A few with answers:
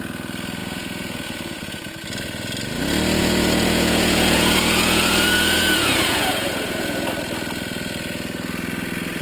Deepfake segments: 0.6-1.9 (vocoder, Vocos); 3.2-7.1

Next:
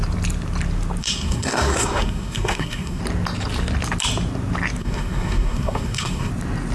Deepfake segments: 1.0-3.0 (codec, SNAC); 4.8-6.3

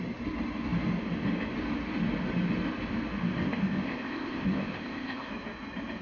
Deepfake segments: 3.4-5.3 (codec, ZipCodec)

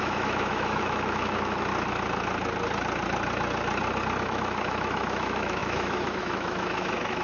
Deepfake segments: 0.0-1.7 (autoencoder, DAC-VAE); 4.2-7.2

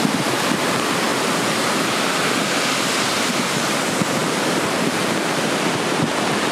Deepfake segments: none

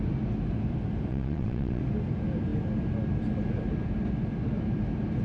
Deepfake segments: 1.1-1.8 (vocoder, WaveNeXt)

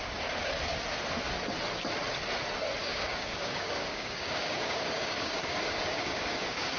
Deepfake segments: 2.8-6.8 (codec, DAC)